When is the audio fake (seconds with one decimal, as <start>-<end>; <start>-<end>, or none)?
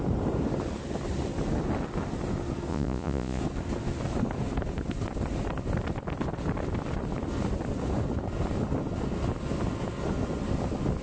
2.7-3.4